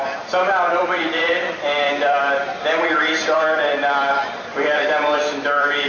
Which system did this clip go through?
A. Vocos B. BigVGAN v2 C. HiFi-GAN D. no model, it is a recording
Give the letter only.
B